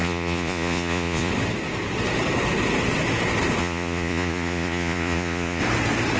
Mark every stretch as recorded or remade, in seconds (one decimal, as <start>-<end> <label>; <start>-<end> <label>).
0.0-1.3 remade; 1.3-3.6 recorded; 3.6-5.6 remade; 5.6-6.2 recorded